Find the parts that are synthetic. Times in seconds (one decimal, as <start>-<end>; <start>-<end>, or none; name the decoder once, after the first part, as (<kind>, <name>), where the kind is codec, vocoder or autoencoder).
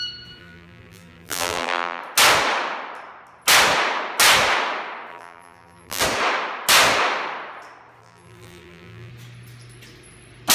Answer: 0.4-2.0 (vocoder, BigVGAN v2); 5.1-6.0; 8.0-9.1